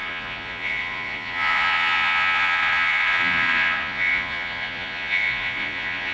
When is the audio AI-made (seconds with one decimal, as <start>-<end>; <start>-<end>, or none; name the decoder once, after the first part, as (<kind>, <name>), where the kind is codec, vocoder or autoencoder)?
0.0-6.1 (vocoder, Vocos)